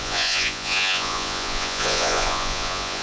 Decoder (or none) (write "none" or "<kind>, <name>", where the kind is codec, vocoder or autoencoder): vocoder, Vocos